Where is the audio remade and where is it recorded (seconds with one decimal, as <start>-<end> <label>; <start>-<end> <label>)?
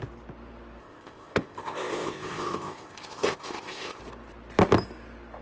0.0-0.8 recorded; 0.8-4.0 remade; 4.0-5.4 recorded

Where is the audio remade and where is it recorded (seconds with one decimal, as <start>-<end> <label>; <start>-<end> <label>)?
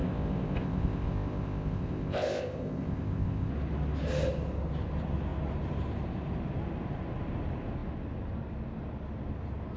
0.0-3.5 remade; 3.5-9.8 recorded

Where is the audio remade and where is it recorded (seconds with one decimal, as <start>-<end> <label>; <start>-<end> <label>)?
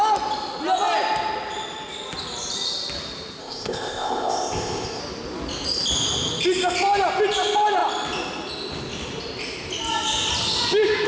0.0-3.4 recorded; 3.4-5.0 remade; 5.0-11.1 recorded